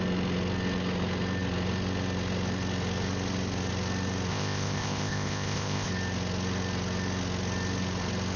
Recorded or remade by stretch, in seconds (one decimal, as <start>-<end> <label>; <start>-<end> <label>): 0.0-4.3 recorded; 4.3-5.9 remade; 5.9-8.4 recorded